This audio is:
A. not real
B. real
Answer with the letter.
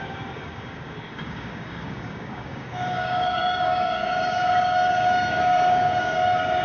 A